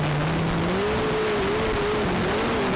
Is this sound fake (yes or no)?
no